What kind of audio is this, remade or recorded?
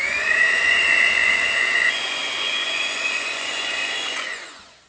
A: remade